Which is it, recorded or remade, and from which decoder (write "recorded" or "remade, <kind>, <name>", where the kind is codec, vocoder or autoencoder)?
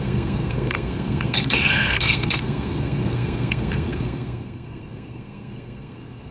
remade, codec, SNAC